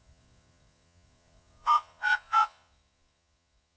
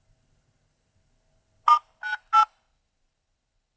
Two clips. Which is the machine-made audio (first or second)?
first